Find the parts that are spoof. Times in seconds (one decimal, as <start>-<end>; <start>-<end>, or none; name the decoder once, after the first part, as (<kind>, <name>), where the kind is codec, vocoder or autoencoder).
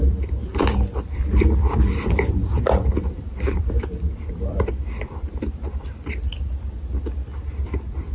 0.0-6.3 (vocoder, BigVGAN v2); 7.4-8.1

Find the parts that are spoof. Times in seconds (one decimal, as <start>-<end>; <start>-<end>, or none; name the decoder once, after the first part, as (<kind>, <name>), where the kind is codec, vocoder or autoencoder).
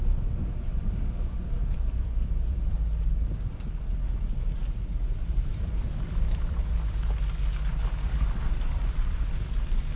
0.0-4.6 (vocoder, BigVGAN v2); 5.3-6.7; 7.7-10.0